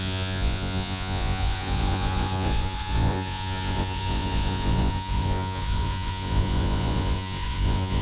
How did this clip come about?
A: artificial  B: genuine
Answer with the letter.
A